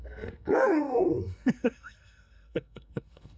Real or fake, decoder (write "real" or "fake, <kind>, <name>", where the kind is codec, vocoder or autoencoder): fake, codec, SNAC